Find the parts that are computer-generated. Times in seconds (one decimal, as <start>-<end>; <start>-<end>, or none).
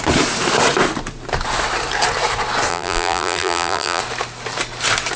2.7-4.0